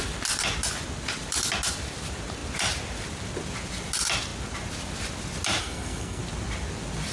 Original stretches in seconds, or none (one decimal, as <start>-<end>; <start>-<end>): 0.0-5.6; 6.2-7.1